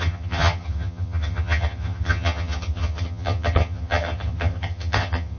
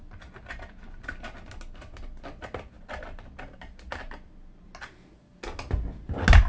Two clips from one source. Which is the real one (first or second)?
second